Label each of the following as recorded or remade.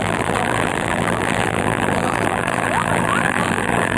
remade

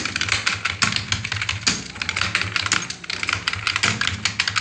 recorded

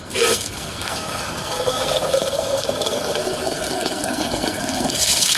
remade